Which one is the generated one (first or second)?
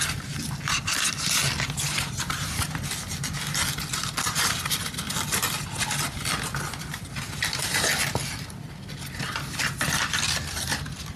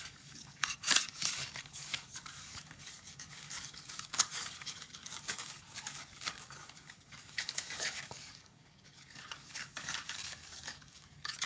second